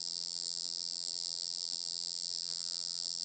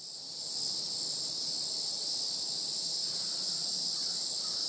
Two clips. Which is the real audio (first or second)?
second